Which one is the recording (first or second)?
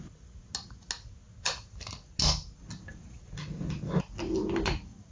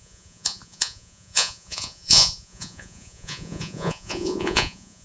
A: first